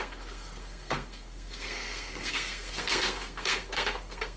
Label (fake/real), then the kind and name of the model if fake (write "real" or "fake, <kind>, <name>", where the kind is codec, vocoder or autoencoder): fake, codec, SNAC